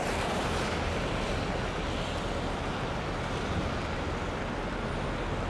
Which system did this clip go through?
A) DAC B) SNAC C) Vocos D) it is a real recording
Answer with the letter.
D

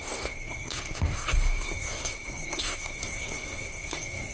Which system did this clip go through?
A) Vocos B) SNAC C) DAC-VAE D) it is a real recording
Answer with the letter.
B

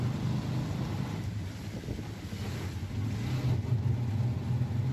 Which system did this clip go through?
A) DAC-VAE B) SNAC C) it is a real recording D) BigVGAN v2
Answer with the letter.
C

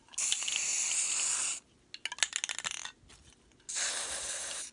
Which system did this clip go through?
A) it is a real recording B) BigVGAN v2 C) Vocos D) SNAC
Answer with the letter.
A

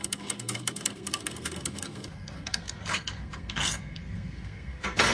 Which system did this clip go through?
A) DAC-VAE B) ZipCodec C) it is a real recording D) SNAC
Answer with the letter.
D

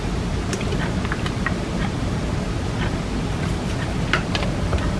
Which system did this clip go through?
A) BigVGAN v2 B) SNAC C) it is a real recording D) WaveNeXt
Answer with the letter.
C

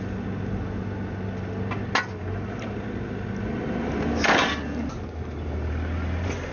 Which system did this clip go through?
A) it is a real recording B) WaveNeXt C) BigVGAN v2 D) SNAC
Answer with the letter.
A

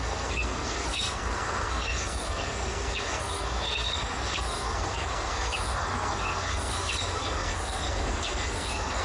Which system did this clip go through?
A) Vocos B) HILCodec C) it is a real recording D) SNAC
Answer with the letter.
D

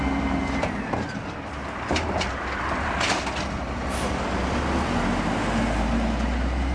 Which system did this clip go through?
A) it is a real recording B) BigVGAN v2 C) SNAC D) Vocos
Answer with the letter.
A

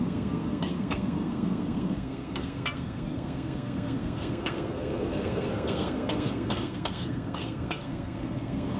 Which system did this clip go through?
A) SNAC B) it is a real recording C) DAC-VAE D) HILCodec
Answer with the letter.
A